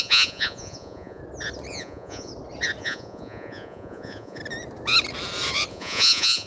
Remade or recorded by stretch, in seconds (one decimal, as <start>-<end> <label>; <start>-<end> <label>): 0.0-1.2 remade; 1.2-1.7 recorded; 1.7-2.3 remade; 2.3-2.8 recorded; 2.8-4.4 remade; 4.4-5.7 recorded; 5.7-6.5 remade